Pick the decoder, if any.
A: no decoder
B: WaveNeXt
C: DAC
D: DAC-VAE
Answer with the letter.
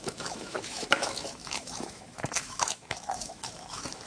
D